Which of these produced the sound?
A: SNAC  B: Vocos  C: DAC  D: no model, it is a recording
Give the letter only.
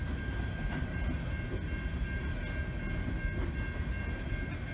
D